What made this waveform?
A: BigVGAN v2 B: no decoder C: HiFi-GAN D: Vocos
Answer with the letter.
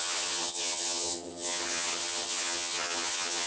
C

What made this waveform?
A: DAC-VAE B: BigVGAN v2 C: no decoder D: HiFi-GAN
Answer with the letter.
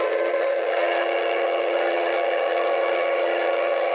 D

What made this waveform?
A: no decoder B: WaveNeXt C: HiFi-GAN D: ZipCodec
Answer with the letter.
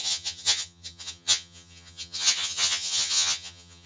C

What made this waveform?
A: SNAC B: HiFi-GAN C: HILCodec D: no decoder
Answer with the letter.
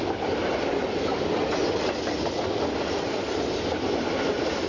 D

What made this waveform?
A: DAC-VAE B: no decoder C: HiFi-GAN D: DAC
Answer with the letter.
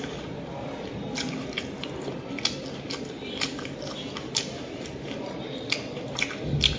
B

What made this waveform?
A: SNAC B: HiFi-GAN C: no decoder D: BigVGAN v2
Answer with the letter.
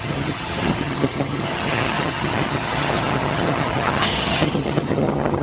B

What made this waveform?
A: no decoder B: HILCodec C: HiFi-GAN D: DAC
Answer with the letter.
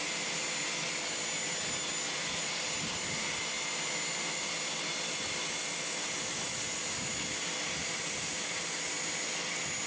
A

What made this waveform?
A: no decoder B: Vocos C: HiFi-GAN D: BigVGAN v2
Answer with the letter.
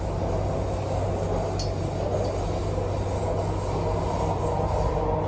A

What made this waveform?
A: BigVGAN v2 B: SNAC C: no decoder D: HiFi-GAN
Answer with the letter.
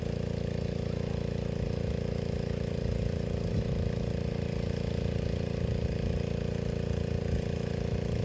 C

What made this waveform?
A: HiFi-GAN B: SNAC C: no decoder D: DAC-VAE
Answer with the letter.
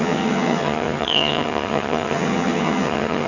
A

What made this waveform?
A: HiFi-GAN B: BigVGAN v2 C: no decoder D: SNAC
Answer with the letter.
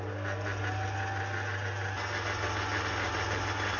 C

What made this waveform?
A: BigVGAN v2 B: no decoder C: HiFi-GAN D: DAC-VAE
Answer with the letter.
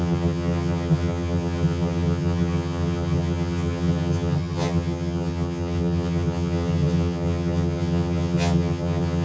C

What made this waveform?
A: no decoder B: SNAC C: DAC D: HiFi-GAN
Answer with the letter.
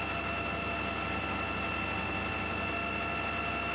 A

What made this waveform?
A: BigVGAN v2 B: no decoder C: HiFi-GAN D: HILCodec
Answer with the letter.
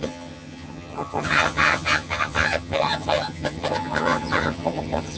C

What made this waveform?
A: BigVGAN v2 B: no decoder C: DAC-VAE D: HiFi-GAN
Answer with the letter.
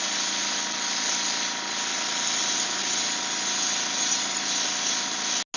B